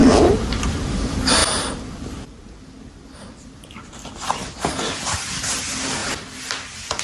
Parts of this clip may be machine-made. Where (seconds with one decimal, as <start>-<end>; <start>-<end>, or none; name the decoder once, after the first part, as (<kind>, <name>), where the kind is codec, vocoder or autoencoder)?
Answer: 0.6-6.0 (vocoder, BigVGAN v2)